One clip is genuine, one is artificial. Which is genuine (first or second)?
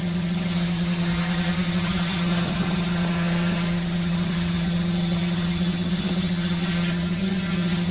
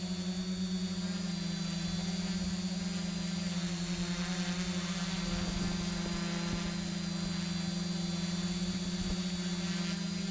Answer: second